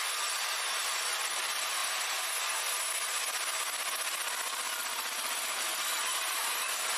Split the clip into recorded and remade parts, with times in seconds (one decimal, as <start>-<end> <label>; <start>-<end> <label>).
0.0-1.8 remade; 1.8-5.6 recorded; 5.6-7.0 remade